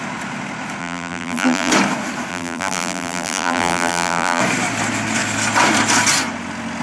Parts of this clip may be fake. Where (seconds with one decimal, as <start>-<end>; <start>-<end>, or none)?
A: 0.8-1.7; 2.3-4.4